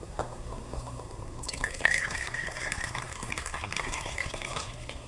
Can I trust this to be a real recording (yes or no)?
no